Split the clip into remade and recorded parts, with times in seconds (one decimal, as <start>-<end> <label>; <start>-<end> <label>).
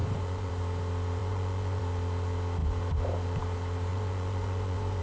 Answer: 0.0-0.5 remade; 0.5-1.2 recorded; 1.2-1.8 remade; 1.8-3.9 recorded; 3.9-5.0 remade